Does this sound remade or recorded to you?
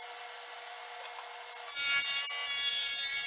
recorded